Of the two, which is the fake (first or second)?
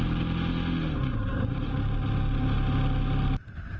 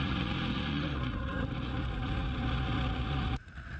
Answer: second